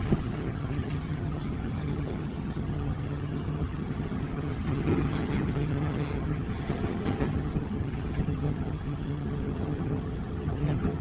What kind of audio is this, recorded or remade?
remade